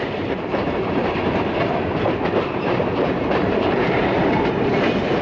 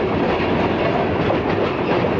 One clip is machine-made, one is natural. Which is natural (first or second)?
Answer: second